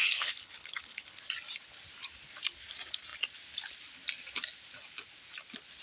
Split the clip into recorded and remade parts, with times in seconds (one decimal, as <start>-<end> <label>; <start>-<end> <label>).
0.0-1.2 remade; 1.2-5.8 recorded